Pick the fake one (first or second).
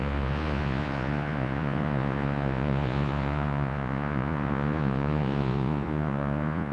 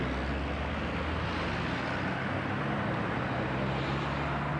first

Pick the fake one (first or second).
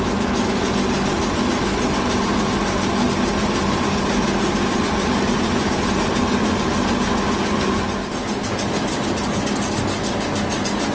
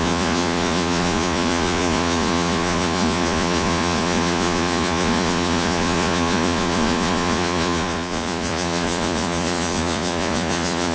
second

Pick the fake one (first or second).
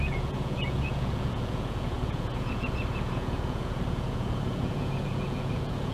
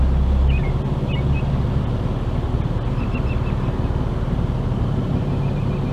first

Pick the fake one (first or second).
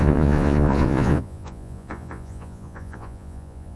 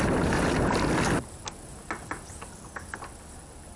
first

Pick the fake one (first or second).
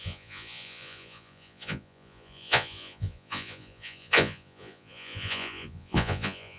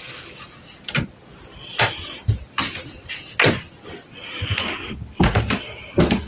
first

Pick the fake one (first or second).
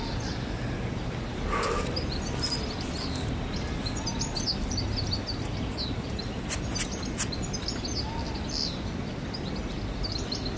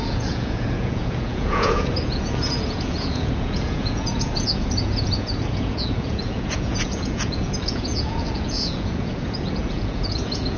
second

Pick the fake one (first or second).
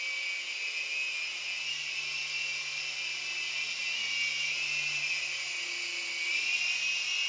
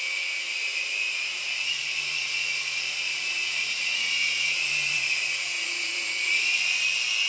second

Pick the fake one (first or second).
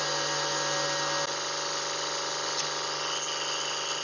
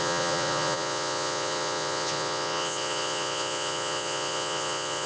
second